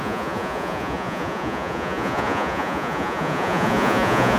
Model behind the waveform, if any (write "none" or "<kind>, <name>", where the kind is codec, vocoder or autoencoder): vocoder, Vocos